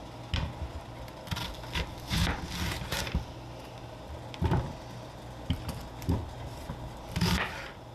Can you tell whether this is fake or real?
real